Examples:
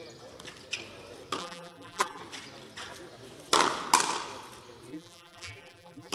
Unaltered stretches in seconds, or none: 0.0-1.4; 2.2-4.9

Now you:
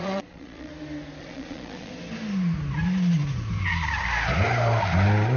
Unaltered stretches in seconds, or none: 0.7-1.2; 1.9-5.4

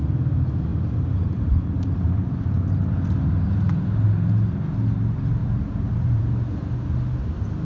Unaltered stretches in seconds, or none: 0.0-0.7; 2.8-5.4; 6.2-7.6